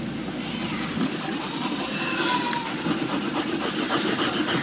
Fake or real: real